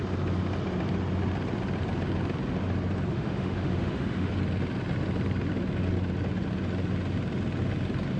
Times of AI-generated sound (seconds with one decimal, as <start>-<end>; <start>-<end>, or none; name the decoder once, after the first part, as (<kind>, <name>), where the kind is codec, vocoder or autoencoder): 3.1-4.3 (autoencoder, DAC-VAE)